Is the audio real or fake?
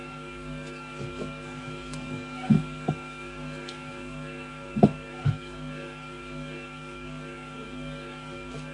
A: fake